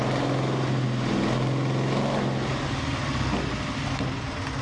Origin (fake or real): real